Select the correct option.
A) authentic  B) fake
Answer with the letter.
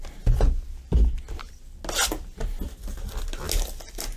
A